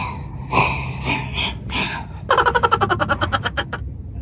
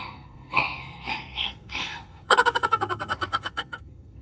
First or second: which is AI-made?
second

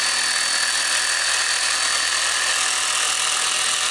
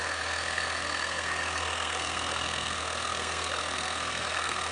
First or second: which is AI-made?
second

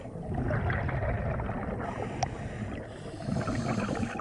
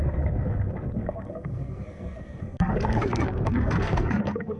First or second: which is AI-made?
second